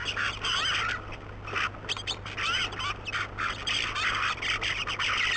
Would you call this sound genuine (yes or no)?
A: yes